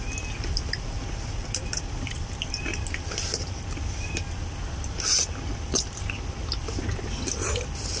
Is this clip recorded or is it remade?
recorded